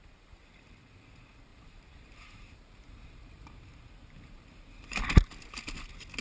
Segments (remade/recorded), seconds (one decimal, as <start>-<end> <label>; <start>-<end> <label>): 0.0-1.5 recorded; 1.5-5.0 remade; 5.0-6.2 recorded